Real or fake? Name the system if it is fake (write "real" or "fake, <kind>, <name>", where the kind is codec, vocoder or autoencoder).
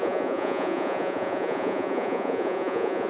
fake, vocoder, Vocos